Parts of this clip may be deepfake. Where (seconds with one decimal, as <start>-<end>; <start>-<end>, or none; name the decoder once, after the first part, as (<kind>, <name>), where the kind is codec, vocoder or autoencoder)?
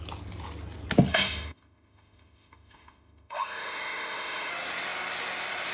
1.1-4.5 (autoencoder, DAC-VAE)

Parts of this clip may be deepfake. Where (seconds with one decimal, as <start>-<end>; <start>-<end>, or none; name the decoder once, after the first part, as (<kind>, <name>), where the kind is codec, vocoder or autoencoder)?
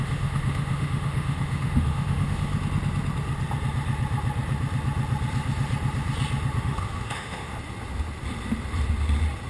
0.0-2.5 (autoencoder, DAC-VAE); 6.6-7.5